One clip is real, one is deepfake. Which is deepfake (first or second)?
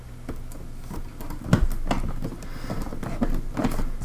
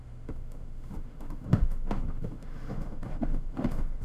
second